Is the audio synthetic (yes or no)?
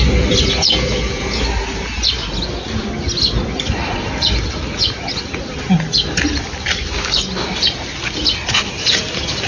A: no